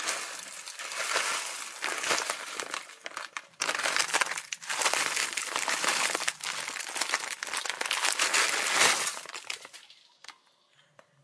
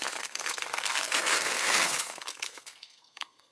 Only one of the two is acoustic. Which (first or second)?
first